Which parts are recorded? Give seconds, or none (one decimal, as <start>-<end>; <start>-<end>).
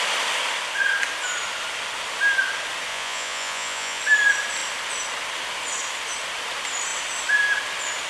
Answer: 0.0-2.9; 4.0-8.1